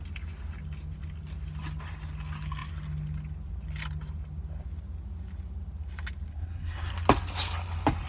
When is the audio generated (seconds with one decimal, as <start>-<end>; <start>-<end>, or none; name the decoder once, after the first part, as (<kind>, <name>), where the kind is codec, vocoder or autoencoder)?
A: 6.3-6.9 (codec, SNAC)